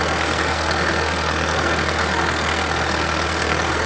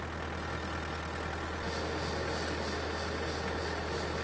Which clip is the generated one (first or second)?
first